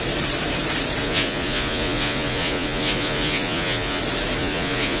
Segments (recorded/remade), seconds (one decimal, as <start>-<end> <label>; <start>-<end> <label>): 0.0-1.0 recorded; 1.0-4.0 remade; 4.0-4.4 recorded; 4.4-5.0 remade